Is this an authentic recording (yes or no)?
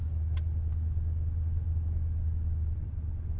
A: yes